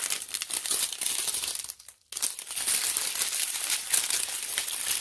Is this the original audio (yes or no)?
yes